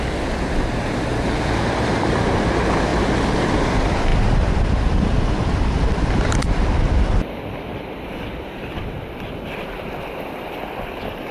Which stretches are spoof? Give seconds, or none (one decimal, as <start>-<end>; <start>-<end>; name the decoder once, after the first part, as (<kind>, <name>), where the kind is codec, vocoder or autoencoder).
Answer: 0.0-4.1 (vocoder, BigVGAN v2); 4.6-11.3